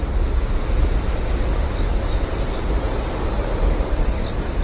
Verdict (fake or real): real